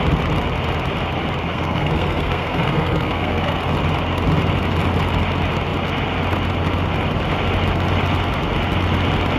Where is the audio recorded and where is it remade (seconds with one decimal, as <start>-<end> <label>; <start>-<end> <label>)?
0.0-1.5 recorded; 1.5-3.6 remade; 3.6-9.4 recorded